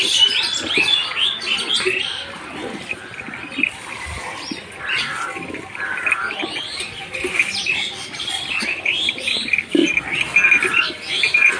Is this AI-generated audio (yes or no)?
no